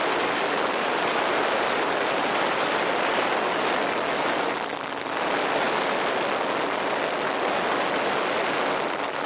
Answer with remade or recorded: recorded